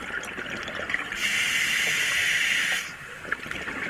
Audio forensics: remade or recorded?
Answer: recorded